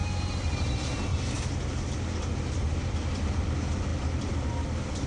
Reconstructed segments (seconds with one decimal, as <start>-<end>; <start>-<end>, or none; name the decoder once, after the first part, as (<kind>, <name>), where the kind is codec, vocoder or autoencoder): 0.6-1.1 (vocoder, BigVGAN v2); 2.5-5.1